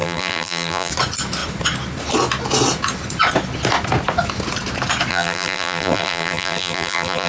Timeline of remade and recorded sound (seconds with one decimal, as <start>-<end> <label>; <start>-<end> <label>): 0.0-0.9 remade; 0.9-5.1 recorded; 5.1-7.3 remade